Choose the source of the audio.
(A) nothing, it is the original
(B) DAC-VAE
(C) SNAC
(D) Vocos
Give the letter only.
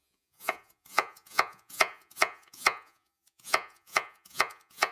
D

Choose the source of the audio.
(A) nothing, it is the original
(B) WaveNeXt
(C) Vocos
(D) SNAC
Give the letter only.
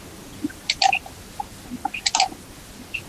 A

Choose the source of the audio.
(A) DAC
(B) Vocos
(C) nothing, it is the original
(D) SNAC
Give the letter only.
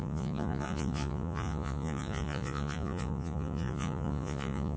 B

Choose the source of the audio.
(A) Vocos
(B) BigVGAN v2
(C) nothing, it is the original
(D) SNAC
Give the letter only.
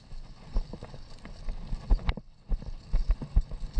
C